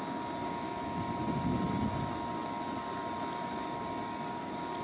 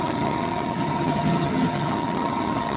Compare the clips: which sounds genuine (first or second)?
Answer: first